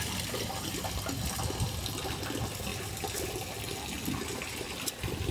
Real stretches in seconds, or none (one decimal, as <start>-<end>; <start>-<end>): 0.0-2.7; 3.3-5.3